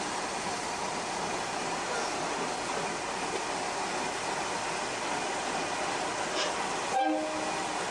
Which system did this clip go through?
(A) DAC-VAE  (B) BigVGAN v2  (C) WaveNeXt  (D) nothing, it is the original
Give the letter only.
D